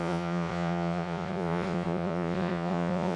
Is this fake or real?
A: fake